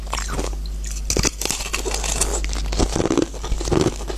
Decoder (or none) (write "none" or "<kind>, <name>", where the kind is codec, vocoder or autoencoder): none